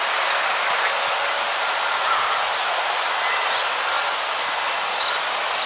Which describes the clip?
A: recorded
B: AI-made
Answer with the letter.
A